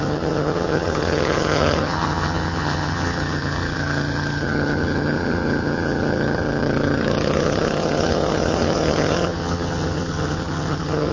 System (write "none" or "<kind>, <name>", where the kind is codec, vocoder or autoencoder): vocoder, HiFi-GAN